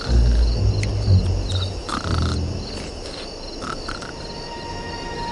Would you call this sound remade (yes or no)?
no